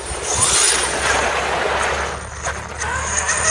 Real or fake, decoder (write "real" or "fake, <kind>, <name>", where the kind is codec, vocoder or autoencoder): real